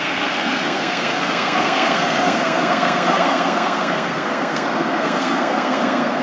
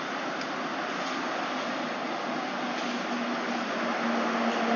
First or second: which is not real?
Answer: first